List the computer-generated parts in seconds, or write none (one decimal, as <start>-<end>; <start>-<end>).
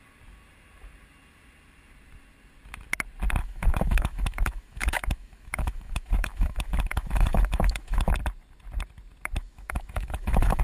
3.4-8.1; 9.4-10.6